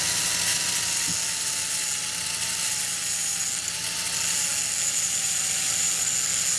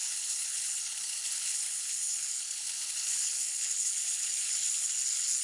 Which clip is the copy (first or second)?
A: second